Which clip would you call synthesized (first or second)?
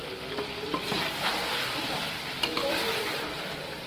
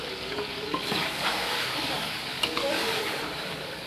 second